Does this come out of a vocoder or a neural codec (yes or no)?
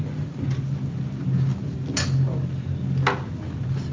no